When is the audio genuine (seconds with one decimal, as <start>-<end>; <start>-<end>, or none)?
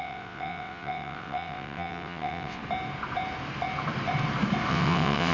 2.6-4.7